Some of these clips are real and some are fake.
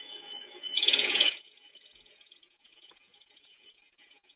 fake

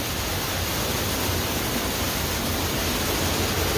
real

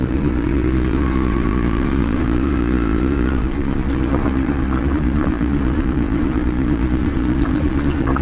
fake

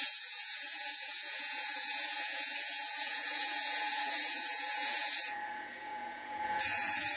fake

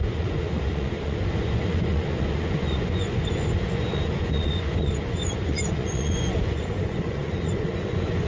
fake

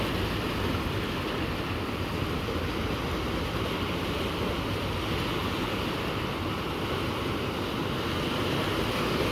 real